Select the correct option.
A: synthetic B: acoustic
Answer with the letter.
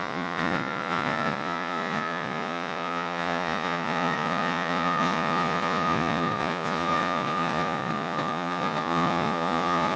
A